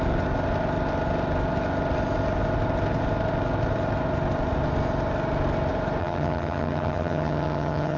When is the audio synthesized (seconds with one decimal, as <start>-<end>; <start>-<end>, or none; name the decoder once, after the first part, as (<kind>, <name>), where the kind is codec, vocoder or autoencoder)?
6.0-8.0 (vocoder, HiFi-GAN)